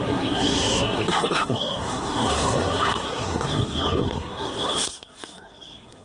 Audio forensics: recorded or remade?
remade